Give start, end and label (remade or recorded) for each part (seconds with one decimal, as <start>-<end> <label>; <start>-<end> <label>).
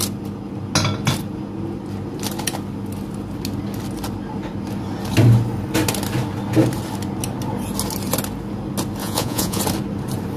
0.0-9.0 recorded; 9.0-9.6 remade; 9.6-10.4 recorded